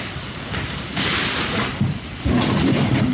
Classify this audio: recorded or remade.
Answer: recorded